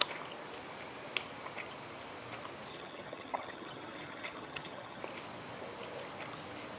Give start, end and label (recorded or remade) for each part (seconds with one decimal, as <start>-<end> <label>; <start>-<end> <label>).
0.0-2.7 recorded; 2.7-5.0 remade; 5.0-6.8 recorded